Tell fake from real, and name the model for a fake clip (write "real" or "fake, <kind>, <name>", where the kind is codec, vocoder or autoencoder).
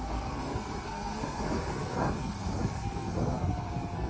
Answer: fake, codec, SNAC